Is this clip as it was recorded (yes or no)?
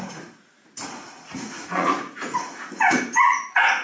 no